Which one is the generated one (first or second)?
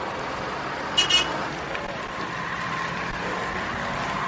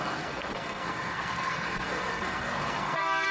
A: second